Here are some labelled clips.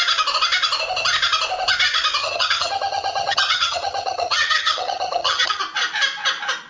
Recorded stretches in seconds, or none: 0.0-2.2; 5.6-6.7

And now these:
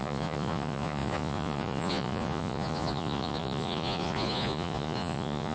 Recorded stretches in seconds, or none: none

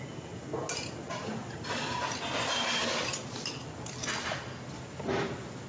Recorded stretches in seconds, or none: 0.0-5.7

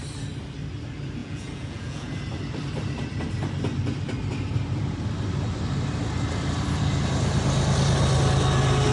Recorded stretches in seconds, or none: 0.0-1.2; 2.1-8.9

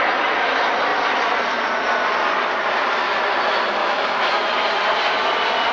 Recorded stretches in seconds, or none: 0.0-3.8; 4.4-5.7

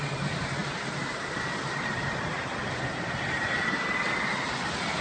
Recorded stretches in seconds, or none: 0.0-0.6; 3.6-5.0

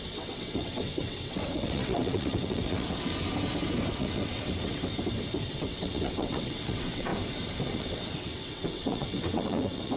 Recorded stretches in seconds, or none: 3.1-3.9; 4.9-5.5; 7.1-7.8